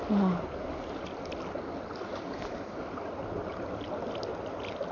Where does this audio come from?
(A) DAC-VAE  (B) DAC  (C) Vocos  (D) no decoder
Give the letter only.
D